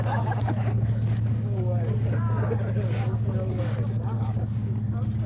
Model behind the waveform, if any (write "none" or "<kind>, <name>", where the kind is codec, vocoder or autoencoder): codec, DAC